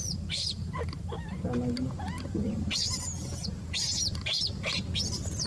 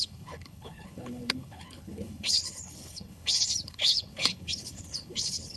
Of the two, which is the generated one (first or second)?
second